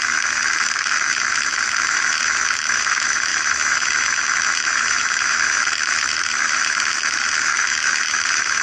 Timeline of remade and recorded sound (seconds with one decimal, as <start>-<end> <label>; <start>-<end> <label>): 0.0-8.6 remade

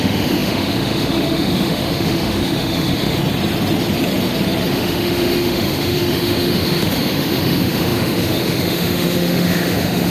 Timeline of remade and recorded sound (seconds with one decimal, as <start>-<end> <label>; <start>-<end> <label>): 0.0-3.2 remade; 3.2-4.7 recorded; 4.7-10.1 remade